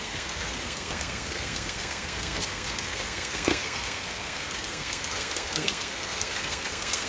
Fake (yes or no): yes